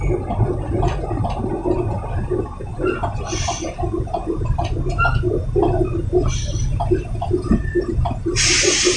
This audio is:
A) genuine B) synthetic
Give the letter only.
A